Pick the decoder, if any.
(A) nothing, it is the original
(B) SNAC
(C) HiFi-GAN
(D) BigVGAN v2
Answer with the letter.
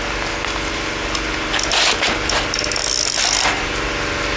A